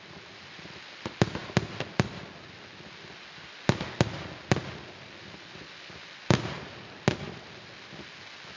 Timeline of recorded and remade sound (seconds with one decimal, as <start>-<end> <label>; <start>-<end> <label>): 0.0-8.6 recorded